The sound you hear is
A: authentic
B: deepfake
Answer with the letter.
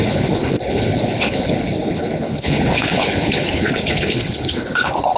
B